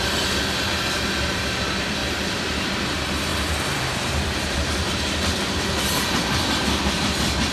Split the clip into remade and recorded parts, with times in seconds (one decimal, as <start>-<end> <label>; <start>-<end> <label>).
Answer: 0.0-2.0 recorded; 2.0-2.8 remade; 2.8-3.3 recorded; 3.3-7.0 remade; 7.0-7.5 recorded